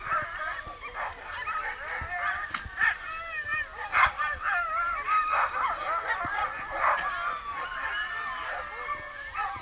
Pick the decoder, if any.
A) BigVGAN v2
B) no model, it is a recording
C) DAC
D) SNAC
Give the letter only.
B